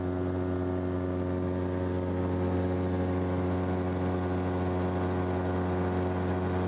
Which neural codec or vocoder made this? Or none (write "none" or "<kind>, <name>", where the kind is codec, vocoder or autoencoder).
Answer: none